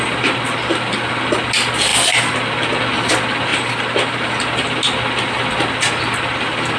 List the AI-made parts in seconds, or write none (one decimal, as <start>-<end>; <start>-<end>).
none